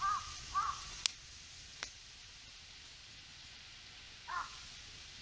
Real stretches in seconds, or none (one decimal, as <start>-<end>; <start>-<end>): 0.0-3.3; 4.8-5.2